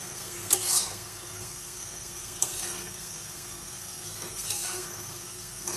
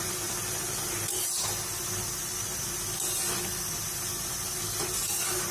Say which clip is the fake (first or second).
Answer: first